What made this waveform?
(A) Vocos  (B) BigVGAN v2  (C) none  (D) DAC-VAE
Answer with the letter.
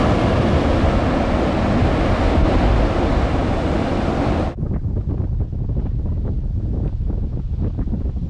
C